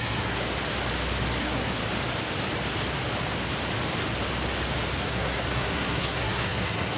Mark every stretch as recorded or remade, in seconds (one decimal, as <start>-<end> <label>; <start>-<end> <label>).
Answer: 0.0-0.4 remade; 0.4-1.4 recorded; 1.4-1.8 remade; 1.8-5.0 recorded; 5.0-7.0 remade